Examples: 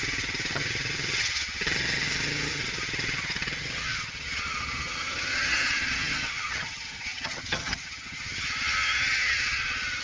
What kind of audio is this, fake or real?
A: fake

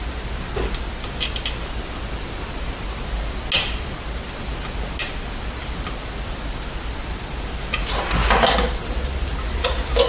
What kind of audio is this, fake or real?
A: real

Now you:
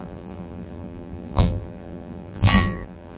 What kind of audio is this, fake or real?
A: fake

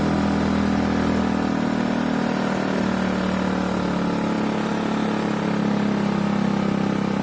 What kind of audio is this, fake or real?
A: real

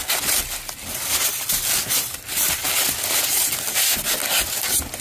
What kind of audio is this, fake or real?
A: real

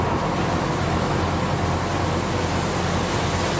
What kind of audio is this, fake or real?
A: real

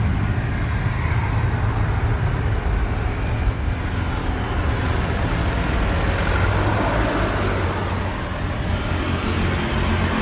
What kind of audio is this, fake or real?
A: real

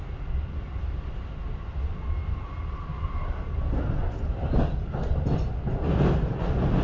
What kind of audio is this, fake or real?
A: real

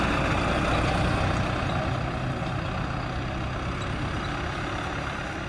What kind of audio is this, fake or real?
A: real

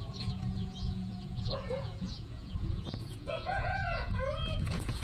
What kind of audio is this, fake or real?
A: fake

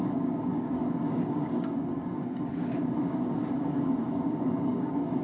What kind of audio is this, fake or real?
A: fake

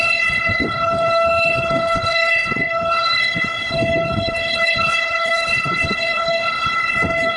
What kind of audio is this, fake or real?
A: fake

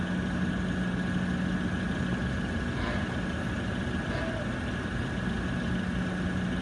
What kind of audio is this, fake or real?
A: real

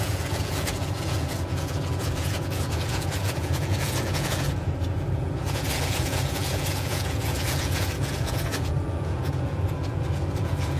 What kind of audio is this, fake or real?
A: fake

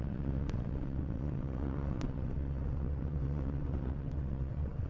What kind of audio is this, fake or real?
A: fake